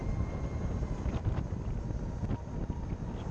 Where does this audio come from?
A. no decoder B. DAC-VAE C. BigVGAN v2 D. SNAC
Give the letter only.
A